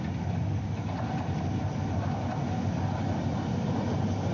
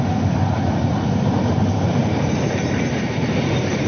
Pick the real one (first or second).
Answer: first